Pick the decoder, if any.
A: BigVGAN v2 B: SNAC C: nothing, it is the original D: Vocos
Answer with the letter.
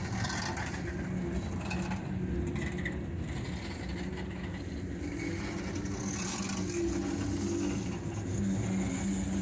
C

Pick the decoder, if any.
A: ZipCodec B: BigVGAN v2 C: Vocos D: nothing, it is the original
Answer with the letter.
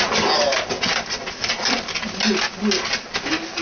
D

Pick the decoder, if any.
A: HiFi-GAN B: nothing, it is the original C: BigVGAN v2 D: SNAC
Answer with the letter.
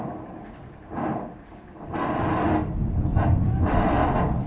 C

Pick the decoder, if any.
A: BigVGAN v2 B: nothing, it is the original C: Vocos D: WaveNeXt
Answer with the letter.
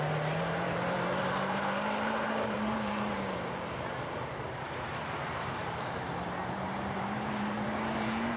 A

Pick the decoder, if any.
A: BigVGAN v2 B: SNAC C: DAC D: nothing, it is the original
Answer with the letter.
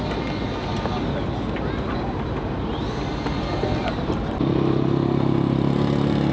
D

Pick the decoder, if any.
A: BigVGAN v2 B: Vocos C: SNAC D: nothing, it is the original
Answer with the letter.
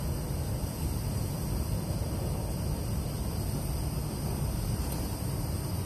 D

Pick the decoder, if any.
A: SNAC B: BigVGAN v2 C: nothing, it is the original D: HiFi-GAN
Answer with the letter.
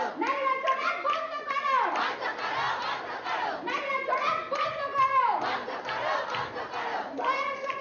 C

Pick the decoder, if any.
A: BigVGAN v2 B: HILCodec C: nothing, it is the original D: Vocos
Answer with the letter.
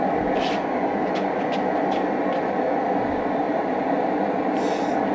C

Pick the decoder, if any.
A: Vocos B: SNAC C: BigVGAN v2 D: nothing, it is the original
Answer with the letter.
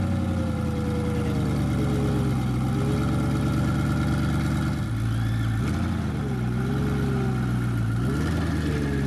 D